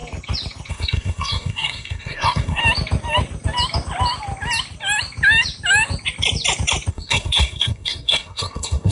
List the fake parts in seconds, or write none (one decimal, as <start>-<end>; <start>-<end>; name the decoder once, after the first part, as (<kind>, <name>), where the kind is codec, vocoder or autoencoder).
0.7-2.6 (codec, SNAC); 6.9-8.9